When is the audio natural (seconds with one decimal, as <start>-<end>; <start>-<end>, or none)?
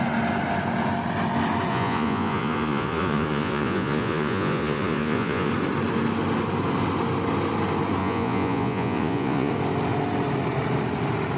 0.0-1.7; 5.5-8.0; 9.5-11.4